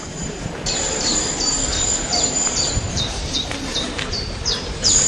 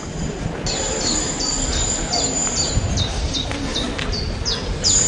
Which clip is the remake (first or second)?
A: first